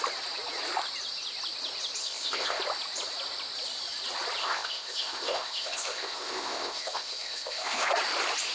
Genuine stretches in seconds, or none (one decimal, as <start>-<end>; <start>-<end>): 0.0-2.0; 2.6-4.4; 7.9-8.5